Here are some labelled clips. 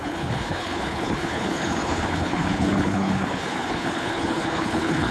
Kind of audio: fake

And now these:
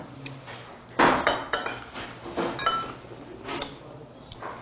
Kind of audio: real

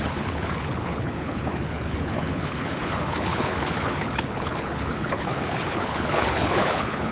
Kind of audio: fake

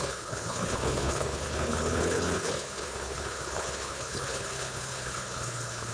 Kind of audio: fake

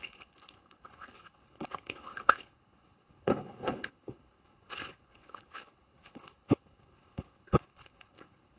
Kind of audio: fake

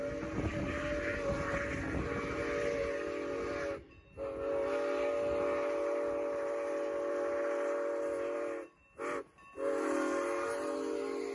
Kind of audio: real